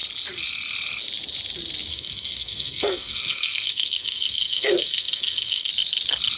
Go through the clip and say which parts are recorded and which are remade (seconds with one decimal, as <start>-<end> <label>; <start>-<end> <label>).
0.0-1.9 recorded; 1.9-5.7 remade; 5.7-6.4 recorded